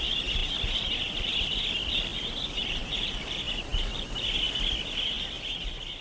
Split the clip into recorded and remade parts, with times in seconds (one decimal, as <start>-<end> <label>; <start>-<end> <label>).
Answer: 0.0-6.0 recorded